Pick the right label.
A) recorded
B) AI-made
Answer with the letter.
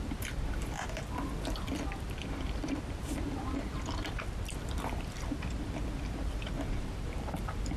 B